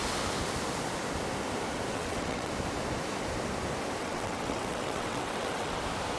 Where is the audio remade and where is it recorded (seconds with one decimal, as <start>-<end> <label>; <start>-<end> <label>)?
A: 0.0-1.9 recorded; 1.9-2.5 remade; 2.5-4.0 recorded; 4.0-5.8 remade; 5.8-6.2 recorded